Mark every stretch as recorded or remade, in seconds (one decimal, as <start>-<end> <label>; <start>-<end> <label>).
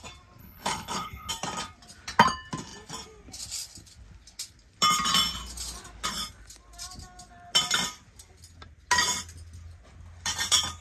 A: 0.0-0.4 recorded; 0.4-1.3 remade; 1.3-10.8 recorded